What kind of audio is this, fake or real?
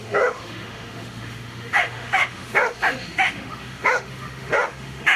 fake